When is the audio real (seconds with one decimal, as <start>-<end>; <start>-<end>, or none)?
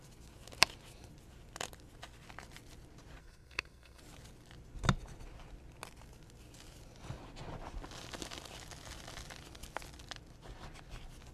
0.0-3.2; 4.0-11.3